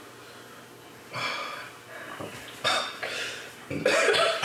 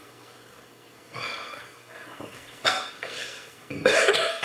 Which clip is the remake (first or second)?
second